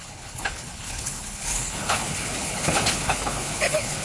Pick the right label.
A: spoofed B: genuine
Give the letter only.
A